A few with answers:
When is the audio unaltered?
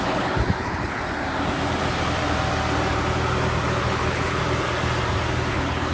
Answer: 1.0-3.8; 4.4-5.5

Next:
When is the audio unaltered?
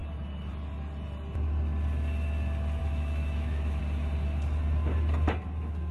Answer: 0.0-2.8; 3.8-5.9